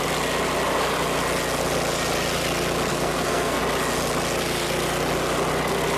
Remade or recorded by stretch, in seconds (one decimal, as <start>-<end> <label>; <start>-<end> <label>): 0.0-2.9 recorded; 2.9-3.6 remade; 3.6-6.0 recorded